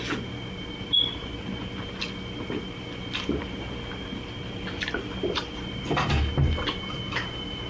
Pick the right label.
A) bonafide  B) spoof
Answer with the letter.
A